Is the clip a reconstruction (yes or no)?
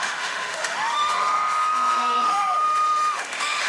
yes